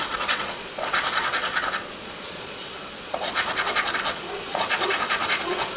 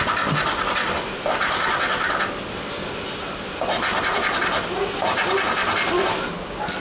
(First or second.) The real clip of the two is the second